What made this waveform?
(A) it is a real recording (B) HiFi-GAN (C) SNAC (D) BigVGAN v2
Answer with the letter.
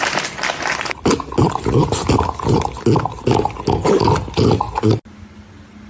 A